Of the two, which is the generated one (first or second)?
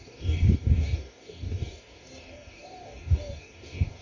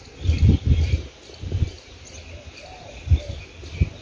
first